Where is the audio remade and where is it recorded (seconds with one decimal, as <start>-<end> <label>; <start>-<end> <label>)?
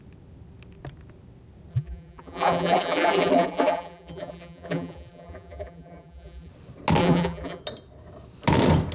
0.0-1.7 recorded; 1.7-6.5 remade; 6.5-7.0 recorded; 7.0-7.6 remade; 7.6-8.9 recorded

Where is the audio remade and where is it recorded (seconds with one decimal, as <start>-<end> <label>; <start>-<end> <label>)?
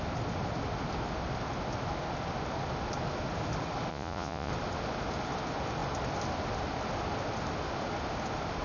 0.0-3.9 recorded; 3.9-4.5 remade; 4.5-8.6 recorded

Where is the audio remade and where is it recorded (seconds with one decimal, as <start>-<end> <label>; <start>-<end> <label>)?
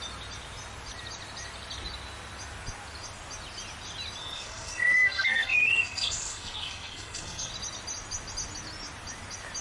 0.0-4.2 recorded; 4.2-7.5 remade; 7.5-9.6 recorded